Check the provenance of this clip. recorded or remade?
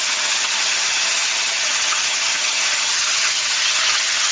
remade